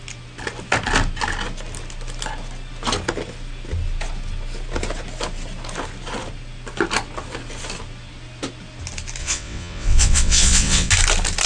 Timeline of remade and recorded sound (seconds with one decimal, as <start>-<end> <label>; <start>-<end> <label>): 0.0-9.2 recorded; 9.2-10.9 remade; 10.9-11.5 recorded